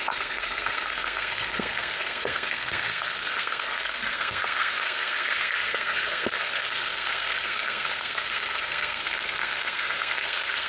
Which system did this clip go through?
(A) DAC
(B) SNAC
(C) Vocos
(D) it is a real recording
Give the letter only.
B